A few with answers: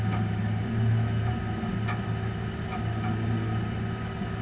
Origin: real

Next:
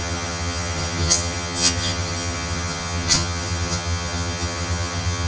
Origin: fake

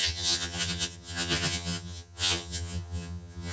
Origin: fake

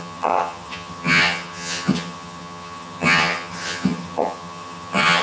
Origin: fake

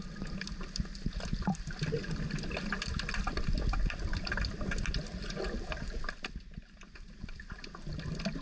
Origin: real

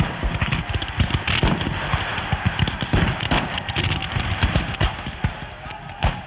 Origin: real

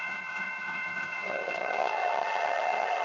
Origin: fake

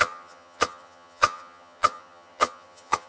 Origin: fake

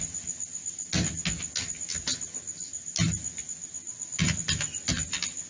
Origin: real